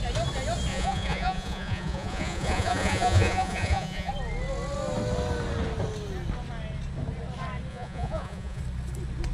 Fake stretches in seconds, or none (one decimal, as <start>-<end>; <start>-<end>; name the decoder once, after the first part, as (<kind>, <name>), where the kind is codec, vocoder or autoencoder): 0.7-4.1 (vocoder, Vocos); 7.7-8.6